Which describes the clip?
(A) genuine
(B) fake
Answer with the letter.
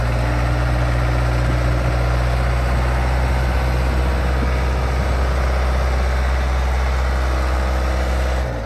A